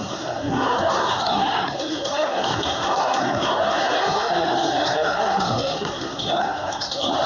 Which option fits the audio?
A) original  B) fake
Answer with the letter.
B